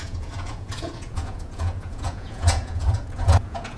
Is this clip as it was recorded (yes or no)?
no